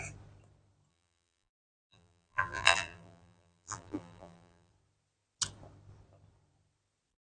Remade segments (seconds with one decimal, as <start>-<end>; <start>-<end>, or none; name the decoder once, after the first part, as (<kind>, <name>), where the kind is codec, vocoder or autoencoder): 0.9-4.7 (vocoder, BigVGAN v2)